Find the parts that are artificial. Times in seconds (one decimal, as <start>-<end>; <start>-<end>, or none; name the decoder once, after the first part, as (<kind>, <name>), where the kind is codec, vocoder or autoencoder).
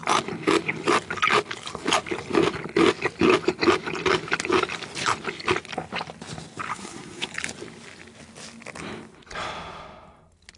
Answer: 6.7-7.3 (codec, SNAC)